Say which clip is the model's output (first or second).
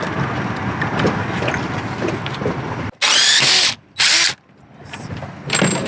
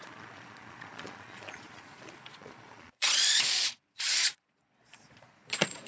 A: second